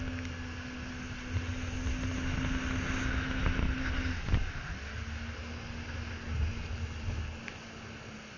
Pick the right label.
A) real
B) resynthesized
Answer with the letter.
A